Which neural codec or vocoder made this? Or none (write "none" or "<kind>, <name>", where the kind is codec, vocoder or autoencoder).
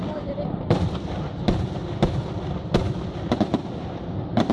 none